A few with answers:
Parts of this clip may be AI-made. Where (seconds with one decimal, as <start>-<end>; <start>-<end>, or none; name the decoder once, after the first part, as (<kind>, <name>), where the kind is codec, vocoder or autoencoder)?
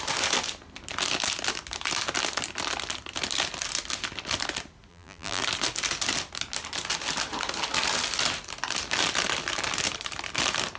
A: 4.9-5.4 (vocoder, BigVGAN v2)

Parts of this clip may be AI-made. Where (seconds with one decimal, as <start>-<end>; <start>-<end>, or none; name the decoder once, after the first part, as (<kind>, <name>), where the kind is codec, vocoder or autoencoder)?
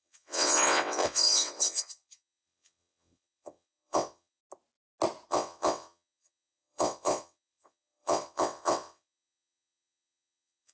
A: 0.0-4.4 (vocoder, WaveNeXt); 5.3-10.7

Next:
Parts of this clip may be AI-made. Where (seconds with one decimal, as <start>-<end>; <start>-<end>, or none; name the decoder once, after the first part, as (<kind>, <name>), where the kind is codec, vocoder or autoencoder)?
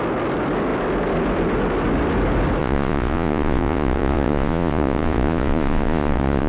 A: 2.6-6.5 (vocoder, Vocos)